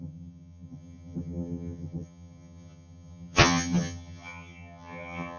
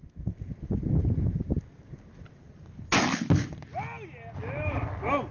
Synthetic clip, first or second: first